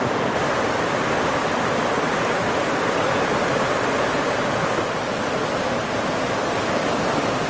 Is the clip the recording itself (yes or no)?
yes